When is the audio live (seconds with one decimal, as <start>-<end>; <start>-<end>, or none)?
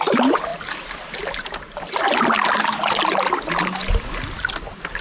0.0-5.0